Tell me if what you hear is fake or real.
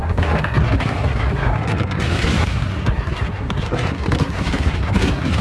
fake